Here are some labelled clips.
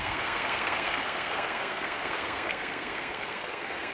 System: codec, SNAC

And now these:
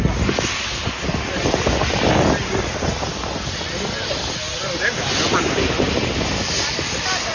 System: none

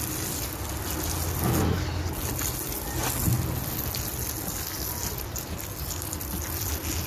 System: none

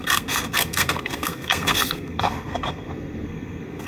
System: codec, SNAC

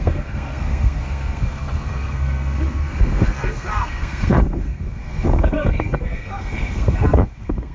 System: codec, SNAC